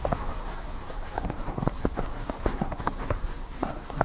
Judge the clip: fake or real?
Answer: fake